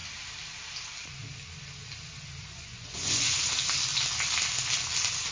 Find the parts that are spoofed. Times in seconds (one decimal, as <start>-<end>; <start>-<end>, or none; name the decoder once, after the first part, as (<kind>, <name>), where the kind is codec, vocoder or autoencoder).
2.4-3.5 (vocoder, Vocos)